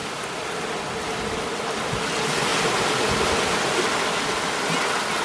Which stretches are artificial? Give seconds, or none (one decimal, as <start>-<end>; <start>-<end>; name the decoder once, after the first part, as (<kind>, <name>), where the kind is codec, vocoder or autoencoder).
none